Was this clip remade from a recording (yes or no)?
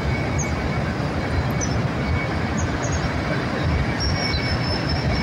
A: no